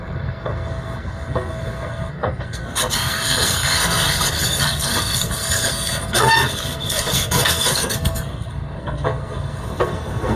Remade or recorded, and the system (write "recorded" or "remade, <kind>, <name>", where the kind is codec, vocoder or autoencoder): remade, codec, SNAC